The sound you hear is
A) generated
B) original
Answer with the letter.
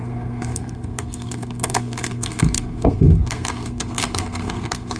A